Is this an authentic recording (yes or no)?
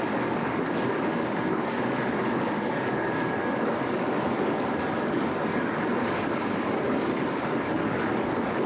no